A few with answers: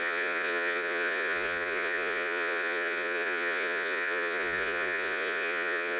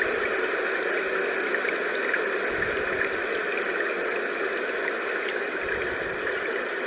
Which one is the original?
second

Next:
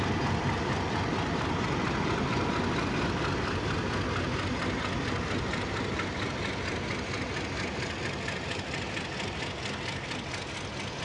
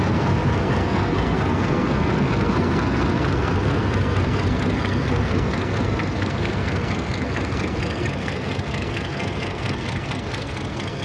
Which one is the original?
first